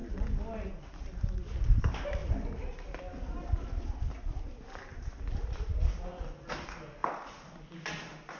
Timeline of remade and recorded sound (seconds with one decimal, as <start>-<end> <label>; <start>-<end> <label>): 0.0-8.4 recorded